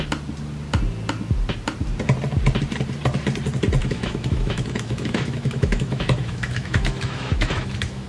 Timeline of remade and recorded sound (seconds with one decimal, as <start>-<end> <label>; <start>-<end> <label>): 0.0-3.8 recorded; 3.8-8.1 remade

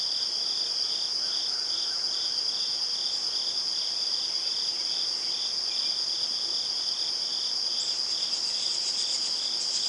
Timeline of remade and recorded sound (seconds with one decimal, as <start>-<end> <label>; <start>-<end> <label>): 0.0-9.9 recorded

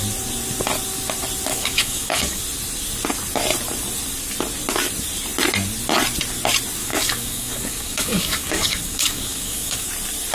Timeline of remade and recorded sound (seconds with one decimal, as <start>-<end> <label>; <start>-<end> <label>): 0.0-1.5 recorded; 1.5-2.4 remade; 2.4-6.8 recorded; 6.8-9.9 remade; 9.9-10.3 recorded

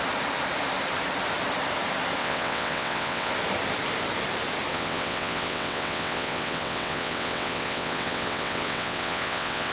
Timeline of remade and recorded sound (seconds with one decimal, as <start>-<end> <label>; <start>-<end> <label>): 0.0-2.2 recorded; 2.2-3.3 remade; 3.3-4.7 recorded; 4.7-9.7 remade

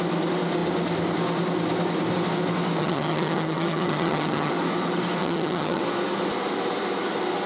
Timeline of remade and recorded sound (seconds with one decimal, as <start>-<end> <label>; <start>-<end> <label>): 0.0-2.8 recorded; 2.8-4.5 remade; 4.5-5.2 recorded; 5.2-5.8 remade; 5.8-7.5 recorded

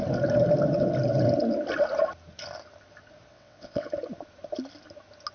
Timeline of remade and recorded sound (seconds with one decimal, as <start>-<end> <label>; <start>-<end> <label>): 0.0-3.3 recorded; 3.3-3.9 remade; 3.9-5.3 recorded

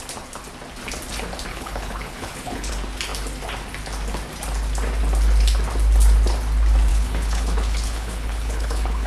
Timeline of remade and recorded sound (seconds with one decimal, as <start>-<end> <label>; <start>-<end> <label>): 0.0-1.5 recorded; 1.5-2.7 remade; 2.7-6.9 recorded; 6.9-9.1 remade